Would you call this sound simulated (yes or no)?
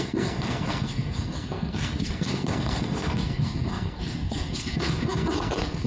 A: yes